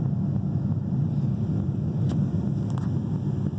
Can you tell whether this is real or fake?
real